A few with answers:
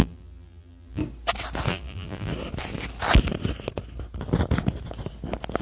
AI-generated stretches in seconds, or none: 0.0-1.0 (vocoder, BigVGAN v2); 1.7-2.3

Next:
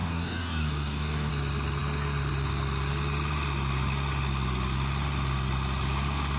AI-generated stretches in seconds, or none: 0.0-1.3 (codec, DAC)

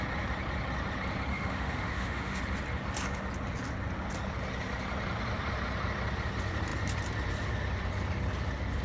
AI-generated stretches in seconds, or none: 1.3-2.4 (autoencoder, DAC-VAE)

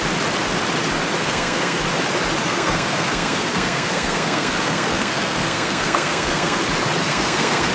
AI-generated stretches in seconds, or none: 1.2-1.8 (codec, SNAC); 2.4-6.6; 7.0-7.7

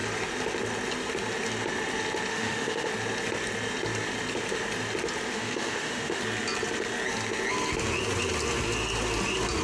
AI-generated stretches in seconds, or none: 2.3-2.9 (autoencoder, DAC-VAE); 5.3-6.2

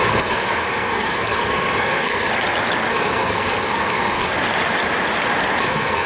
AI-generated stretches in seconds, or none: 0.0-2.3 (codec, SNAC); 2.9-4.3; 5.6-6.1